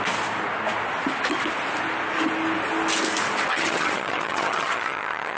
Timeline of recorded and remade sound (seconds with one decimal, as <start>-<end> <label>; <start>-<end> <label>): 0.0-3.5 recorded; 3.5-5.4 remade